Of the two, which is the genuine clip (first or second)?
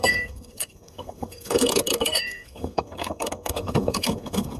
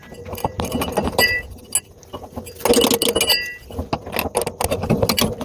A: second